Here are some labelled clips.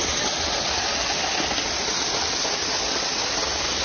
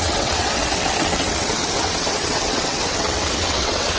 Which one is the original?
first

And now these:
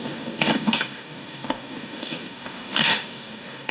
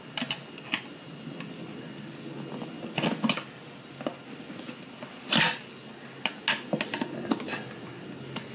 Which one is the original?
second